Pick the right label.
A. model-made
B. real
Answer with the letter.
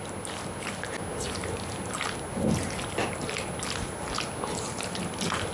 B